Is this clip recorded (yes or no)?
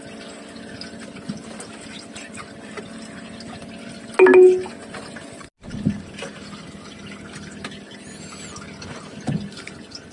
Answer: yes